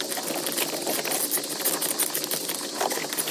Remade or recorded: recorded